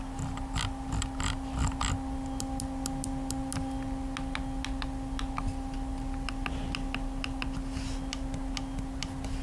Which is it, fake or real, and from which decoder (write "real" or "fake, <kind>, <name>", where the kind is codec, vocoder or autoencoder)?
real